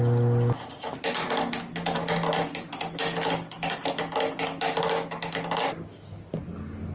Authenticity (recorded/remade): recorded